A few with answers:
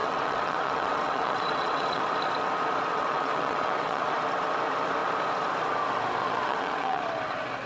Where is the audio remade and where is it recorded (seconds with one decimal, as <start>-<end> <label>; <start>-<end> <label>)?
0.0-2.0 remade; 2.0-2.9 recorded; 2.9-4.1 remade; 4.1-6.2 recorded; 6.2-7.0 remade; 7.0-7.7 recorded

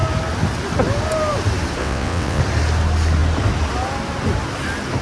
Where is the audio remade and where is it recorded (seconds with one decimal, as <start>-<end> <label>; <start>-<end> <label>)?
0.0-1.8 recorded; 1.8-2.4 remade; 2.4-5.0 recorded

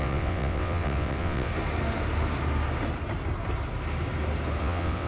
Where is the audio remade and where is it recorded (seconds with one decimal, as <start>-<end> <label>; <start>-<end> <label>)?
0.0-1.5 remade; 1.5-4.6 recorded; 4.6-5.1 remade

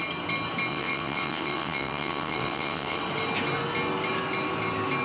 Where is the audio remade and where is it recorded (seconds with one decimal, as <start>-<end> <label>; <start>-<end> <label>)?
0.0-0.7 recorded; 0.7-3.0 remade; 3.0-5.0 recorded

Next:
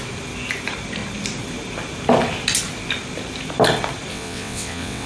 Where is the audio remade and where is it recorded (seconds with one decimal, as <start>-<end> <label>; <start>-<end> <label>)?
0.0-4.1 recorded; 4.1-5.1 remade

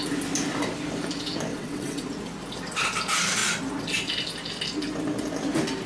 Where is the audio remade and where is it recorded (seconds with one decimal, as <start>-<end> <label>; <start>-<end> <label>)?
0.0-1.5 recorded; 1.5-2.0 remade; 2.0-5.9 recorded

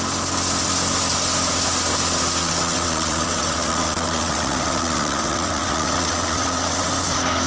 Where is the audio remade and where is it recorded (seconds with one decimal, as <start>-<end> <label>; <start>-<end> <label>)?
0.0-2.4 recorded; 2.4-6.9 remade; 6.9-7.5 recorded

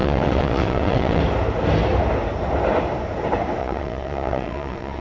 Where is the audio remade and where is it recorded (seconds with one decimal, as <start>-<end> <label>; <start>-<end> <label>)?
0.0-1.2 remade; 1.2-3.6 recorded; 3.6-5.0 remade